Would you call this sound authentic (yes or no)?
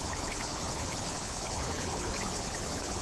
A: no